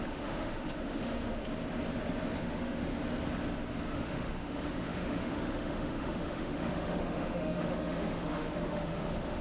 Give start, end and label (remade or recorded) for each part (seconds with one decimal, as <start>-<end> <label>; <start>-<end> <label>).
0.0-1.4 remade; 1.4-2.4 recorded; 2.4-2.9 remade; 2.9-3.9 recorded; 3.9-9.4 remade